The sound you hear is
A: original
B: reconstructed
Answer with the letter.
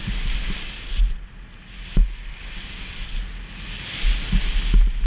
A